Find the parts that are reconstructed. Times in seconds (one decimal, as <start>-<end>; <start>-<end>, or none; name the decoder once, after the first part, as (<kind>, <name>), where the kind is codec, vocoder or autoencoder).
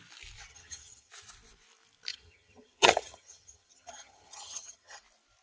0.5-1.1 (vocoder, HiFi-GAN); 2.1-5.0